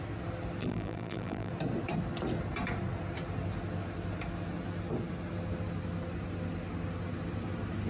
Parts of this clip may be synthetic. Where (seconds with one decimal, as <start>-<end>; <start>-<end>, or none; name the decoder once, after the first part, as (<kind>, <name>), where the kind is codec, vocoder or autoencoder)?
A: 0.6-1.5 (vocoder, BigVGAN v2)